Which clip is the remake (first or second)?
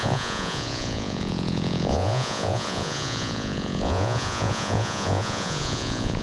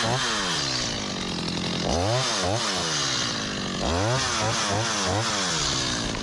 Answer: first